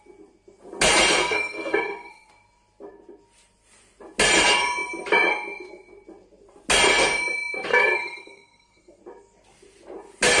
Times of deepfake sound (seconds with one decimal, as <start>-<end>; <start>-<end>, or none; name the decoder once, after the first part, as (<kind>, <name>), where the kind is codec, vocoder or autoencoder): 1.2-2.3 (codec, SNAC); 7.7-9.0